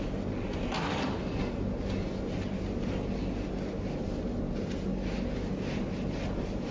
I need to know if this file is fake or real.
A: real